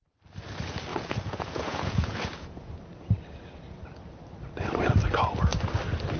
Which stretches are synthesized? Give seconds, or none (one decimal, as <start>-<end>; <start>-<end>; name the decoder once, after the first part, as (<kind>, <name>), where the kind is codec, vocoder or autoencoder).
0.9-2.7 (vocoder, Vocos)